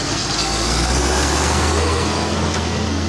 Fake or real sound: fake